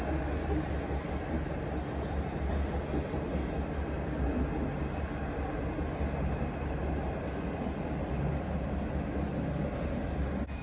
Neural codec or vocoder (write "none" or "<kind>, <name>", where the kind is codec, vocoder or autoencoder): none